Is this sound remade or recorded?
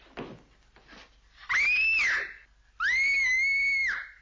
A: recorded